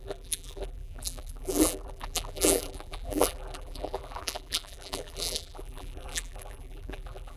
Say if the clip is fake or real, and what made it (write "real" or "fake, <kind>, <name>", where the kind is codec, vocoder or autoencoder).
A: fake, vocoder, BigVGAN v2